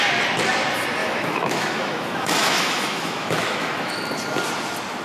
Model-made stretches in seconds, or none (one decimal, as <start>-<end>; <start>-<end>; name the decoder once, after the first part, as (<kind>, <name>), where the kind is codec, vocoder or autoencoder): 1.0-4.0 (autoencoder, DAC-VAE)